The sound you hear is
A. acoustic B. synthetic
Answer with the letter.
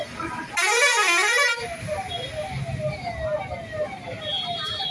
A